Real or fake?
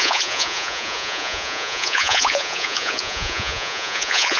fake